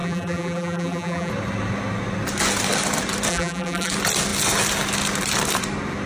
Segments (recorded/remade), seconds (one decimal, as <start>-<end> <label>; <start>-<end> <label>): 0.0-1.3 remade; 1.3-3.3 recorded; 3.3-3.9 remade; 3.9-6.1 recorded